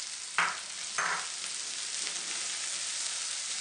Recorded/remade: recorded